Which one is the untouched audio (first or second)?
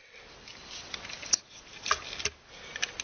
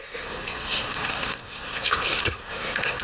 first